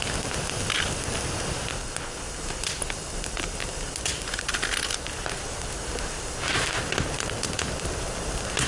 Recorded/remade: recorded